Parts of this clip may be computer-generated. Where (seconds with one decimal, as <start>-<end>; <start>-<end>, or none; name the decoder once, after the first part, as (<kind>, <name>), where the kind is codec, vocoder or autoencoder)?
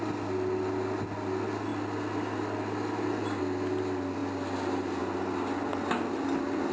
none